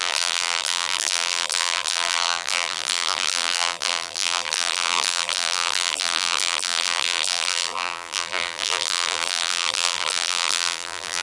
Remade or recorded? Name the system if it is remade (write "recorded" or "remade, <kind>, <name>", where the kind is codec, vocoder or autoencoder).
remade, vocoder, BigVGAN v2